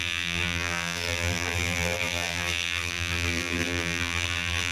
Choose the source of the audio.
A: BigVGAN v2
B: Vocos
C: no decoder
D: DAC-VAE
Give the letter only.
A